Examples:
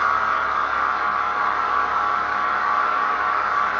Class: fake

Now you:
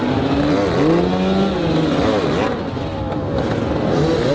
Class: real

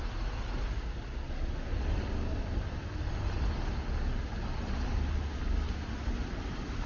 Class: real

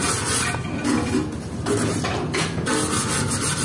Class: real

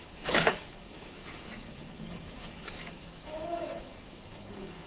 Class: fake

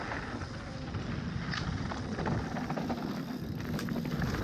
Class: real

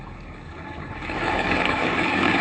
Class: fake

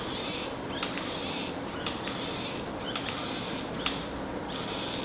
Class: real